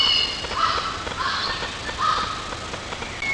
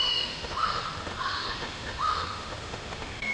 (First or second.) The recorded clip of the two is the first